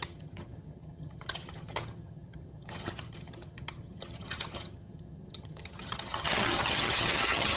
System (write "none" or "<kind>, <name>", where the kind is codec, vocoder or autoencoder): vocoder, HiFi-GAN